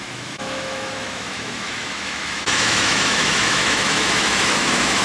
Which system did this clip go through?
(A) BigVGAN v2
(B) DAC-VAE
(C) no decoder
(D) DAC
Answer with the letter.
B